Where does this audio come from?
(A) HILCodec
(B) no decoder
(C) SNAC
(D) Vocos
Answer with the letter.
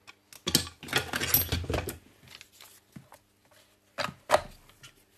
B